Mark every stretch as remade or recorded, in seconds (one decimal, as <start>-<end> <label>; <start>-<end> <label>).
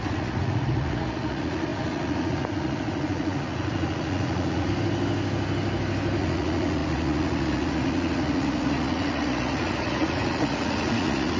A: 0.0-4.7 remade; 4.7-6.2 recorded; 6.2-11.4 remade